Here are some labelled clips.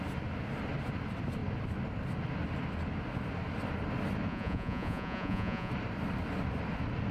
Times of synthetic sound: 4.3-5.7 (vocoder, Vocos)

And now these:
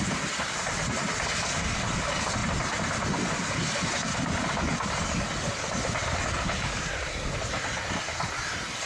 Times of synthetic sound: none

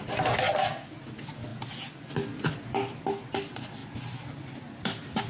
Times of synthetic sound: 3.8-5.3 (vocoder, BigVGAN v2)

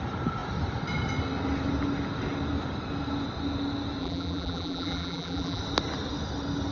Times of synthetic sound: 4.0-5.6 (vocoder, BigVGAN v2)

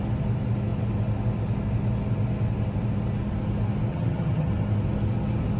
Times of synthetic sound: 3.9-4.5 (vocoder, HiFi-GAN)

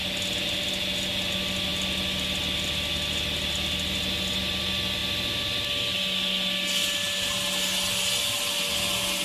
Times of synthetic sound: none

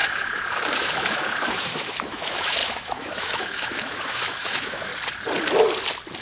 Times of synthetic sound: 0.0-4.9 (autoencoder, DAC-VAE)